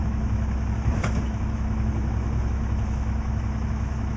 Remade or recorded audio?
remade